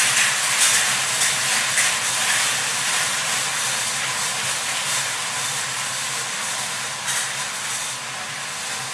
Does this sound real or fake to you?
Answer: real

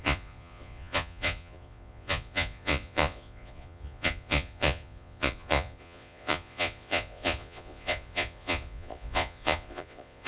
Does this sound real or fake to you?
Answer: fake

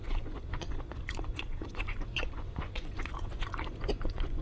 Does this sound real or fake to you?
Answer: fake